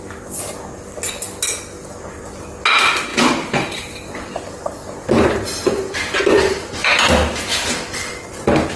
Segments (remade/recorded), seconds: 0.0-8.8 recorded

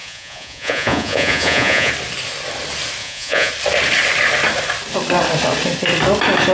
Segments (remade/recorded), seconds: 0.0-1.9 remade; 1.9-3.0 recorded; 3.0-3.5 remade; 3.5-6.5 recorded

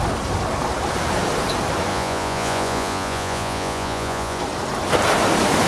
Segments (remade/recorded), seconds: 0.0-1.9 recorded; 1.9-4.4 remade; 4.4-5.7 recorded

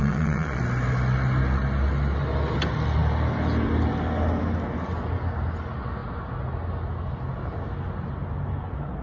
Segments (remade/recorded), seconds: 0.0-0.6 remade; 0.6-9.0 recorded